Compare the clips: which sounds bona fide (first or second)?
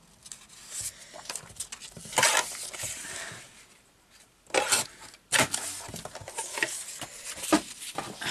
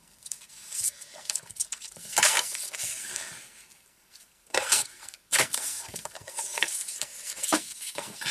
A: first